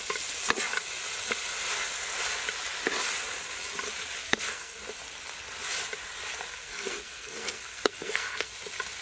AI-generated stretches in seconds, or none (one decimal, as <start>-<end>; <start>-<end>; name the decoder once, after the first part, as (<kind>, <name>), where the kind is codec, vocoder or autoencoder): 4.2-4.8 (codec, SNAC); 6.5-8.5